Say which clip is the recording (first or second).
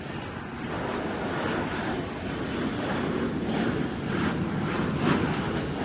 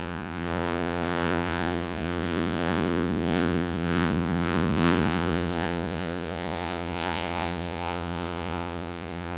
first